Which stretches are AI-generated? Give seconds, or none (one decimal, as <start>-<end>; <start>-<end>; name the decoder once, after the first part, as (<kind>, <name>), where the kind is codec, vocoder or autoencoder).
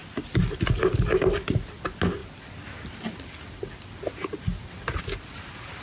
none